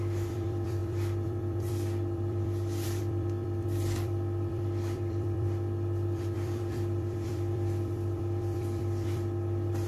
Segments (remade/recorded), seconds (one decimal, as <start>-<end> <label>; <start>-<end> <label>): 0.0-9.9 remade